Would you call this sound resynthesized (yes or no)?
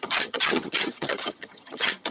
yes